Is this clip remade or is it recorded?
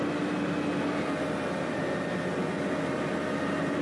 recorded